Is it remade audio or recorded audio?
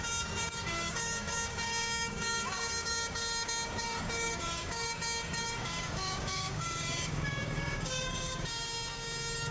remade